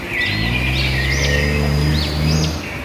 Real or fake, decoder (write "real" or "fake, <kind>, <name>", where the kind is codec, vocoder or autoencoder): real